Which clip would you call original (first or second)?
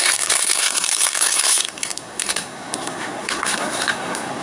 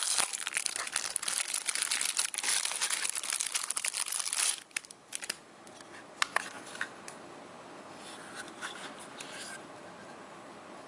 second